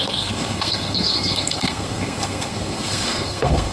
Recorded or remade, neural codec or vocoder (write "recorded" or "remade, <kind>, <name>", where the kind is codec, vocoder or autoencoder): remade, codec, SNAC